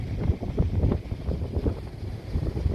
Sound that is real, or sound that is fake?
real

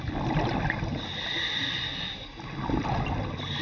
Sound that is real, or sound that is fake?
real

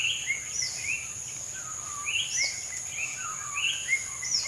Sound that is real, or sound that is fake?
real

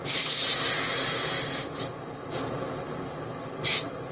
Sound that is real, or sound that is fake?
real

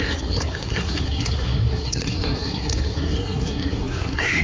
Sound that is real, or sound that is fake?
fake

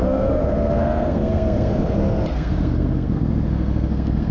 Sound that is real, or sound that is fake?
fake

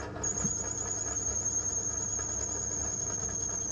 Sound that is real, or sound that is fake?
real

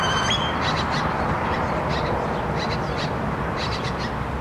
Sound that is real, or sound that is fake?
real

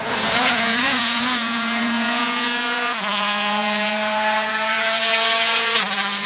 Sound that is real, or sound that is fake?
fake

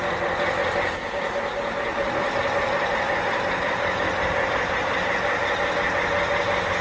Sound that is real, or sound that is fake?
real